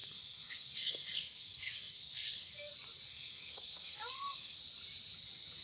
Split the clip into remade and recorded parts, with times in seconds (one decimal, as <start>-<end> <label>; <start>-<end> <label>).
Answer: 0.0-2.7 remade; 2.7-3.1 recorded; 3.1-4.6 remade; 4.6-5.6 recorded